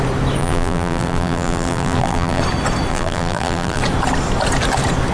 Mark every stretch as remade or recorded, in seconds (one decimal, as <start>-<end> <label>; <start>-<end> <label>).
0.0-0.4 recorded; 0.4-2.4 remade; 2.4-2.9 recorded; 2.9-3.8 remade; 3.8-5.1 recorded